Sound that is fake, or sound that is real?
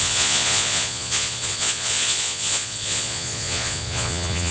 fake